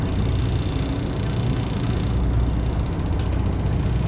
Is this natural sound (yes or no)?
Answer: yes